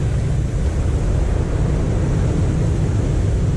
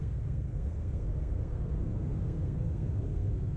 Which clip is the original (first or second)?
first